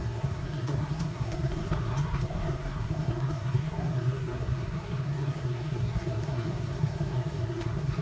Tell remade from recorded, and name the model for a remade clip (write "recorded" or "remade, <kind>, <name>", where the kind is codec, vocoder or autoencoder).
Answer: remade, codec, SNAC